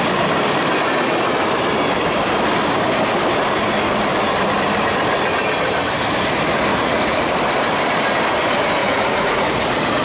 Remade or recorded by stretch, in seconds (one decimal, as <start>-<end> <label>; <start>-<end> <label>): 0.0-6.7 recorded; 6.7-7.3 remade; 7.3-8.8 recorded; 8.8-10.0 remade